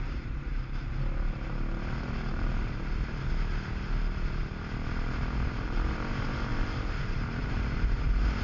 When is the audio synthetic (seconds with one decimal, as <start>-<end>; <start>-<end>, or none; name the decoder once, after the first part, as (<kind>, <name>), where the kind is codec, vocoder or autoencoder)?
0.0-0.5 (vocoder, BigVGAN v2); 5.5-8.4